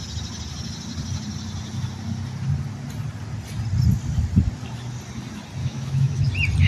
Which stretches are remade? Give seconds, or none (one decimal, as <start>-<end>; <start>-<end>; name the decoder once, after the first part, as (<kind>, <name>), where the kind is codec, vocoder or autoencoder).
5.6-6.3 (autoencoder, DAC-VAE)